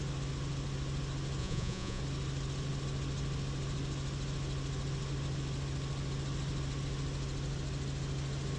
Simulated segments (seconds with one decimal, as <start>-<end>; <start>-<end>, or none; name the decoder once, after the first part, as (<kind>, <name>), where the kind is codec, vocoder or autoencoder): 1.4-2.0 (vocoder, Vocos)